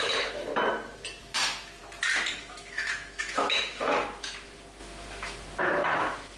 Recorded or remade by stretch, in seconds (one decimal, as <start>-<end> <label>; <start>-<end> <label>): 0.0-0.5 remade; 0.5-1.2 recorded; 1.2-1.8 remade; 1.8-2.4 recorded; 2.4-6.4 remade